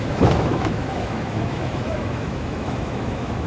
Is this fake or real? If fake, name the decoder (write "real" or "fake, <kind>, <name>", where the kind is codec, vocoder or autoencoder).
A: fake, autoencoder, DAC-VAE